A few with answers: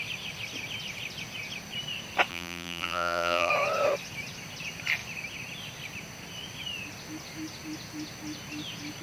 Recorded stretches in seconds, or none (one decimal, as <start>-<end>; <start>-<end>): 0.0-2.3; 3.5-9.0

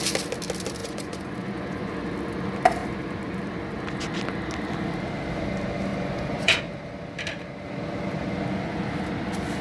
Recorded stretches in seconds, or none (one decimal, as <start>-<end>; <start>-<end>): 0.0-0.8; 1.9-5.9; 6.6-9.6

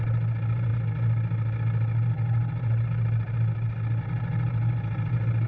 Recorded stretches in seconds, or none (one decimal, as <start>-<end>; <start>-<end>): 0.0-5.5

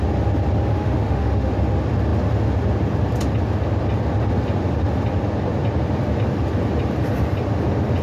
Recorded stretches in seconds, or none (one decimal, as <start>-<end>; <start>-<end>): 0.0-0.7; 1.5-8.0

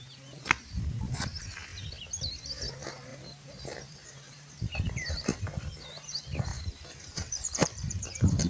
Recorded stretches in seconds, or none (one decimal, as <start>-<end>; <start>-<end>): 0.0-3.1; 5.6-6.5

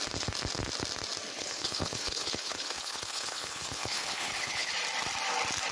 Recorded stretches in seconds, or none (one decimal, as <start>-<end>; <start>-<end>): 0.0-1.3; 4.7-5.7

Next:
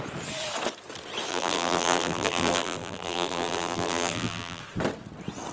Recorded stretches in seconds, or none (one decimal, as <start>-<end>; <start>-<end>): 0.0-1.3; 4.6-5.5